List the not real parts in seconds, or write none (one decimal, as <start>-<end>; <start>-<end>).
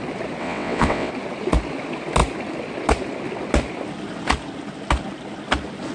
0.4-1.1